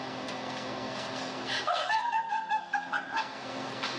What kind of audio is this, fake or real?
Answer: fake